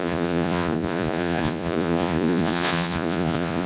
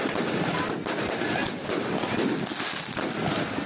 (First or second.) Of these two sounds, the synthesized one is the first